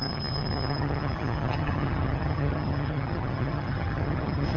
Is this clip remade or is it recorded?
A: remade